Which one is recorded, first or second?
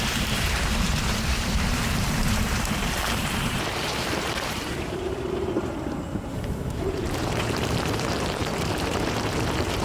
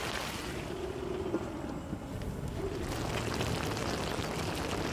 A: second